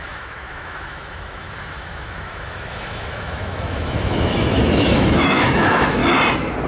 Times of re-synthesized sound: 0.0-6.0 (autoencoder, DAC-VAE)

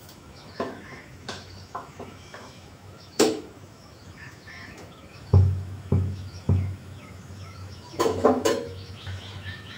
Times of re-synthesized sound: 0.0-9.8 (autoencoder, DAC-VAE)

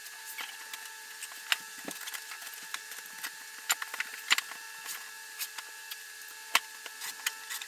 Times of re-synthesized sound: none

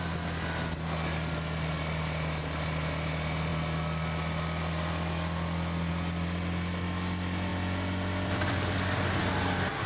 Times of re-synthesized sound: none

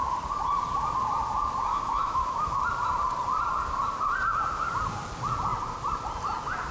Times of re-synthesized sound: 1.7-2.6 (autoencoder, DAC-VAE)